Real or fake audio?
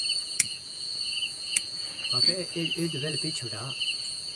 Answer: fake